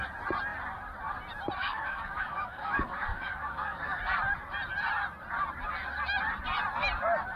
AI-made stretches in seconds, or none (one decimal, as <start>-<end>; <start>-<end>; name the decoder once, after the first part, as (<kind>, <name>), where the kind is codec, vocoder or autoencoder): 1.6-4.0 (codec, DAC)